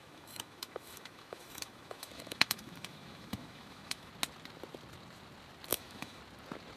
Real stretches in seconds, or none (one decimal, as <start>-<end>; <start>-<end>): 4.1-5.7; 6.2-6.8